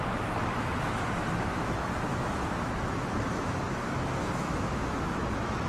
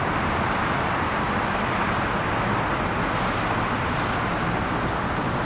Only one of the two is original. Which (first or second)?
second